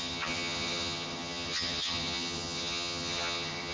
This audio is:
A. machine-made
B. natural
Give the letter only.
A